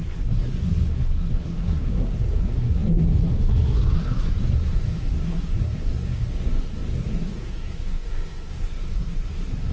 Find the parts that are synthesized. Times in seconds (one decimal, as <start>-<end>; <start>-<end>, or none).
0.0-9.7